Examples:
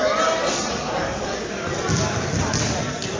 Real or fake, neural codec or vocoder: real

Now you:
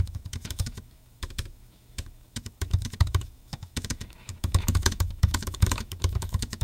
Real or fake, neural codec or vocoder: fake, autoencoder, DAC-VAE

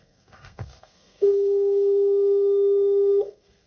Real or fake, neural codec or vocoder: fake, codec, SNAC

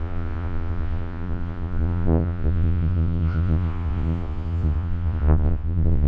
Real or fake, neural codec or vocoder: fake, vocoder, Vocos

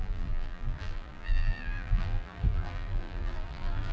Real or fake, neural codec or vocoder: fake, vocoder, BigVGAN v2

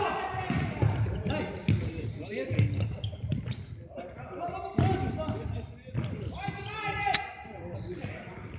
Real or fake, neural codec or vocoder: real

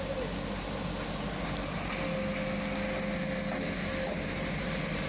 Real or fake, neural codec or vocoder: real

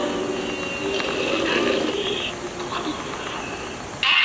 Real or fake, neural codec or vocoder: real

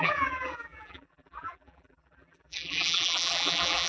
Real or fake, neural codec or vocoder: fake, vocoder, BigVGAN v2